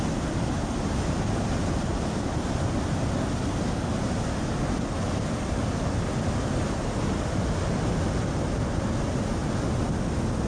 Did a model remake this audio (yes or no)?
no